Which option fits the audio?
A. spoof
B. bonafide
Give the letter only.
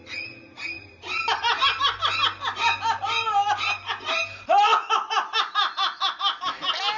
B